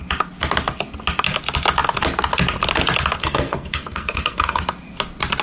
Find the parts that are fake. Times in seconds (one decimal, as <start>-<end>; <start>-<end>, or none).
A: 3.2-4.6